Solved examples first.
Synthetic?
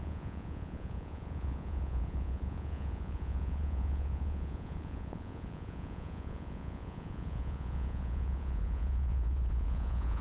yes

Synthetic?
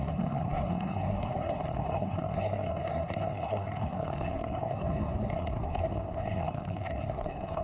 yes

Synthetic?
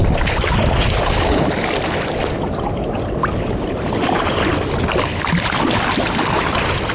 no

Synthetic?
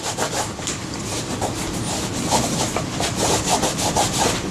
yes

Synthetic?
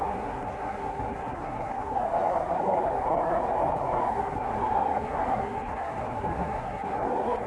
yes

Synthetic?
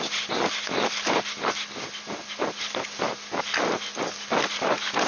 no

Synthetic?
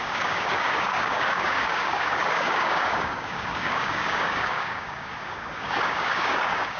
yes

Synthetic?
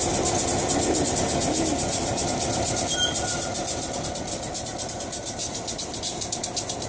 no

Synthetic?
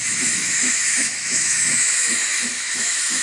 yes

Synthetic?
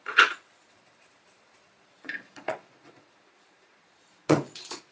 yes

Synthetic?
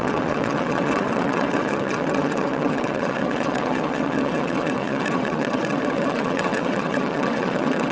yes